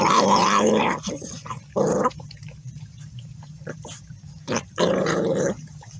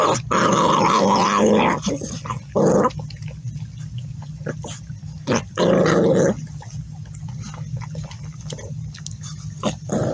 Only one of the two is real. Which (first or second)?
second